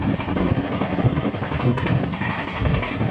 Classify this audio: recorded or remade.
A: remade